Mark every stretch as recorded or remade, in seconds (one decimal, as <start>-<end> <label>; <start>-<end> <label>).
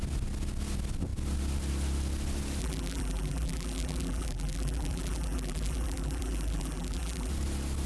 0.0-2.6 recorded; 2.6-7.3 remade; 7.3-7.9 recorded